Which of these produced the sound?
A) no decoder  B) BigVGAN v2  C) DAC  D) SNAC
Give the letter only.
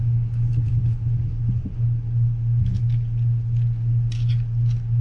A